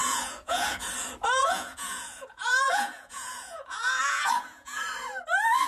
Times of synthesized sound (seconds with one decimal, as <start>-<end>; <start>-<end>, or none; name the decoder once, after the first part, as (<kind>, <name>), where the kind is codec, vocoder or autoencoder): 0.0-0.9 (vocoder, Vocos); 1.4-4.8

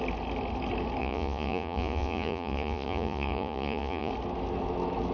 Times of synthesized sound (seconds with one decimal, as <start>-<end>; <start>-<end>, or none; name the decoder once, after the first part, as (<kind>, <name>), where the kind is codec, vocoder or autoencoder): 1.0-4.1 (vocoder, Vocos)

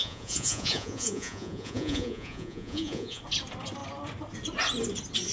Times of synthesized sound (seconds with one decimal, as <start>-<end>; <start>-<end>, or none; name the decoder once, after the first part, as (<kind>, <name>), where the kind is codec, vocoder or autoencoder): 0.0-3.2 (vocoder, Vocos)

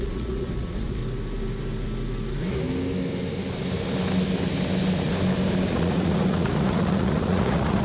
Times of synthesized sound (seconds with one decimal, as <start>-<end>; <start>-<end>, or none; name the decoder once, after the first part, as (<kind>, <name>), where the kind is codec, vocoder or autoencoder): 0.0-1.0 (vocoder, Vocos); 5.7-7.8

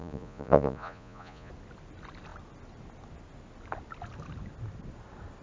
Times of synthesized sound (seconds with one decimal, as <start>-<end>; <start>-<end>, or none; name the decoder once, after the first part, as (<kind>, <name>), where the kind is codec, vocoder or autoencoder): 0.0-1.5 (vocoder, Vocos)

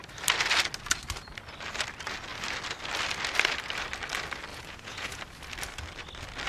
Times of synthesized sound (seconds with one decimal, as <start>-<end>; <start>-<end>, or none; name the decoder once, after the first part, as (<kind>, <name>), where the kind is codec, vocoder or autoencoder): 4.5-5.2 (vocoder, Vocos)